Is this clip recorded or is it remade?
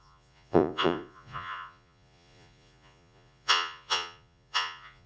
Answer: remade